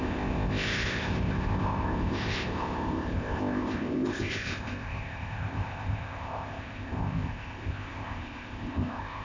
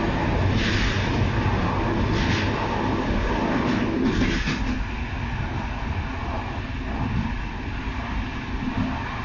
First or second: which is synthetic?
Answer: first